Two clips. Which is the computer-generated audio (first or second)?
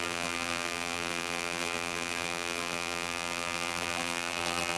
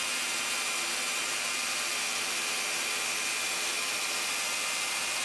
first